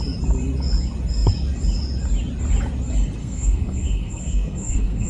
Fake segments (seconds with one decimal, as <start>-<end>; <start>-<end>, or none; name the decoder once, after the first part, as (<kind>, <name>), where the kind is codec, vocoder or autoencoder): 3.2-5.1 (codec, SNAC)